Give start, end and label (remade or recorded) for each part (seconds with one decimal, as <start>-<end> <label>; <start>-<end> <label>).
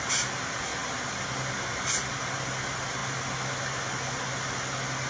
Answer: 0.0-5.1 recorded